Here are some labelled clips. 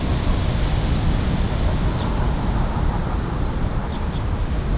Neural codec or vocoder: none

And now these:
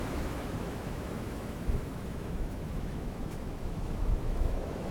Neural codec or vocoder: autoencoder, DAC-VAE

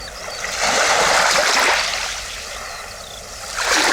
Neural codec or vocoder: none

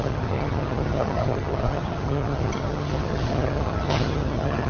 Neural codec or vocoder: vocoder, HiFi-GAN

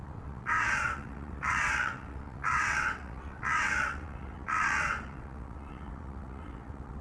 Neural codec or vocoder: vocoder, WaveNeXt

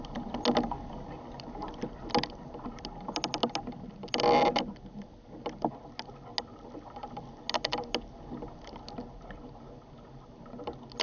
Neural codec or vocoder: none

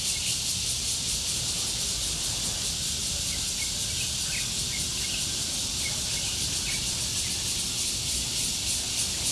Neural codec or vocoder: none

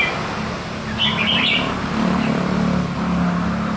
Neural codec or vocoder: none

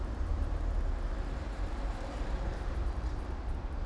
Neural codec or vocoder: vocoder, BigVGAN v2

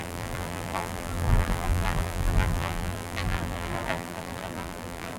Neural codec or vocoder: vocoder, BigVGAN v2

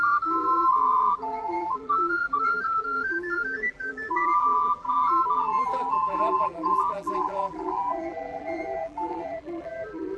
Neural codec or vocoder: vocoder, BigVGAN v2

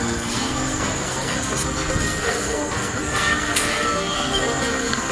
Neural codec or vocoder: codec, SNAC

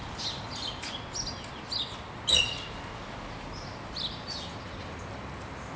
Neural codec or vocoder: none